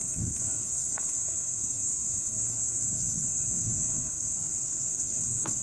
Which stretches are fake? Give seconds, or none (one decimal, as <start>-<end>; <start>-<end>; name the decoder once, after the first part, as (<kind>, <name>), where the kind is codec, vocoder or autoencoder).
0.0-5.6 (codec, SNAC)